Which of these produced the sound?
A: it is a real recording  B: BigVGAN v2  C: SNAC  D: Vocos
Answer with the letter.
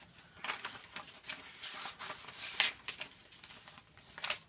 A